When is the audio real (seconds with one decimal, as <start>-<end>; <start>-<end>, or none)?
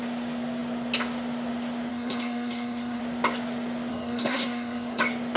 0.0-1.9; 3.0-3.9; 5.0-5.4